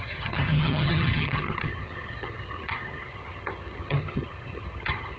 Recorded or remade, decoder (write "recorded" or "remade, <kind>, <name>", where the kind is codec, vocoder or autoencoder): remade, vocoder, HiFi-GAN